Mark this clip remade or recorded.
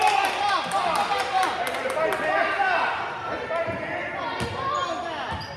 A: recorded